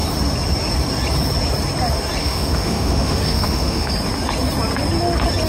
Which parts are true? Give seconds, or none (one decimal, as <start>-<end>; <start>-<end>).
0.0-2.2; 3.9-5.5

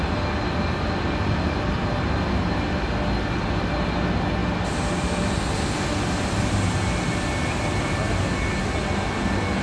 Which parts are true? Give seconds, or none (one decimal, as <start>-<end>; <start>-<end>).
0.0-9.6

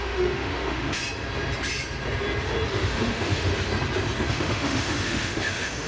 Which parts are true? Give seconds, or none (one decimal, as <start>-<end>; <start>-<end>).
1.0-2.7; 3.5-4.3